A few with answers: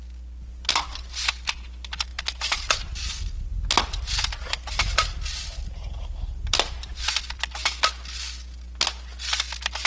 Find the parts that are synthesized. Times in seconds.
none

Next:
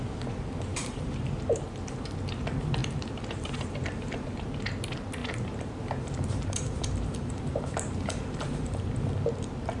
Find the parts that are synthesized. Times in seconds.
0.7-2.2 (vocoder, BigVGAN v2); 2.8-4.5; 5.2-8.9

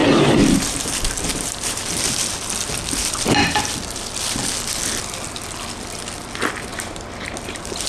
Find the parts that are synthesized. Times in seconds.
0.0-1.9 (vocoder, BigVGAN v2); 6.7-7.9

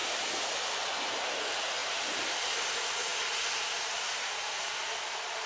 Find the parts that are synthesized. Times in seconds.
0.0-0.5 (vocoder, BigVGAN v2); 1.8-2.7

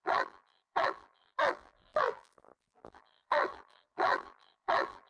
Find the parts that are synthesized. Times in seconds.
0.0-5.1 (vocoder, BigVGAN v2)